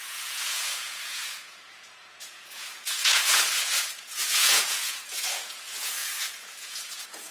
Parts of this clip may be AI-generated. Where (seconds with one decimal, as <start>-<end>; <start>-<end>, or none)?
0.0-7.3

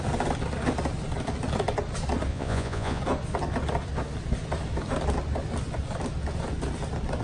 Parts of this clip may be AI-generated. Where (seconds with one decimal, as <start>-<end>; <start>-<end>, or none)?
2.3-3.0

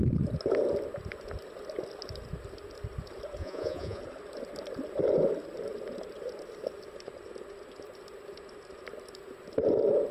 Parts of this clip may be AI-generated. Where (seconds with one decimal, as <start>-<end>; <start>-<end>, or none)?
3.4-4.0